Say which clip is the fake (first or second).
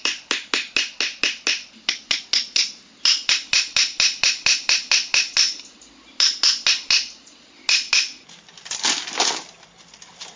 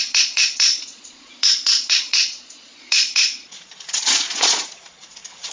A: second